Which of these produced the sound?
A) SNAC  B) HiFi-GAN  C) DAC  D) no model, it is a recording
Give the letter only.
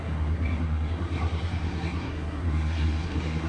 A